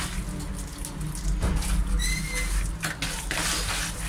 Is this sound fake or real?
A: real